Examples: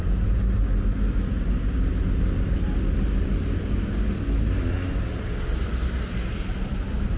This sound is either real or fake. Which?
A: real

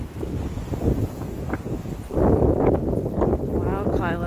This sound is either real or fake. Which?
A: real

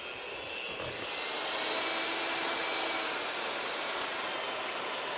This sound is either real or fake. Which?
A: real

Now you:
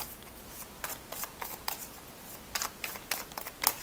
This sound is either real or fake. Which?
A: real